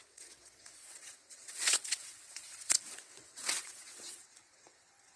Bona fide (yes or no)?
no